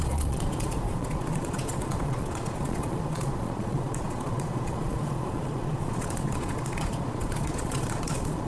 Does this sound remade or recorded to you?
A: remade